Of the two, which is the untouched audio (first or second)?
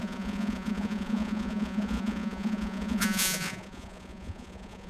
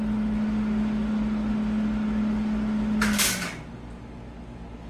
second